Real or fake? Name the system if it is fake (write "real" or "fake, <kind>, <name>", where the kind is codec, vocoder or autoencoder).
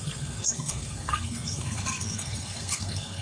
fake, codec, SNAC